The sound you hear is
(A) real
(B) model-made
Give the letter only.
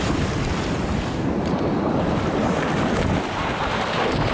A